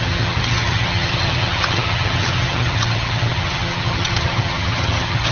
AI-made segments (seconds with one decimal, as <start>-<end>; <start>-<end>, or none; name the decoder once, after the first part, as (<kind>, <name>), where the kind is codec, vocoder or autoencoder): 0.0-5.3 (vocoder, HiFi-GAN)